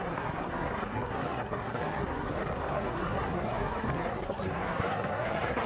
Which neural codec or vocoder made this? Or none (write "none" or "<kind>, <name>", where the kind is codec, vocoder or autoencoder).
codec, SNAC